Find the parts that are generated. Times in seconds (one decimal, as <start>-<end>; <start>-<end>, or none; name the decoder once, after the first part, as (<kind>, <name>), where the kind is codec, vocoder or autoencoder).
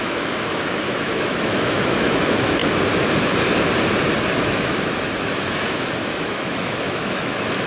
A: 0.0-2.6 (autoencoder, DAC-VAE); 4.4-7.7